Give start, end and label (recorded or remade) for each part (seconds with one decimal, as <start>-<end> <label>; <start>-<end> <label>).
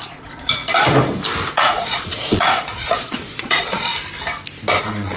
0.0-0.6 remade; 0.6-1.5 recorded; 1.5-3.9 remade; 3.9-4.8 recorded; 4.8-5.2 remade